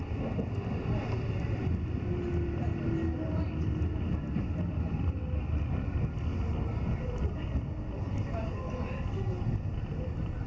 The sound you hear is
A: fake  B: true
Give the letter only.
B